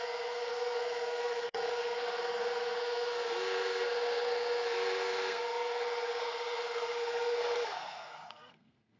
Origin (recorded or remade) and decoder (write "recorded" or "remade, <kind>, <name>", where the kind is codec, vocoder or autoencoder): remade, codec, SNAC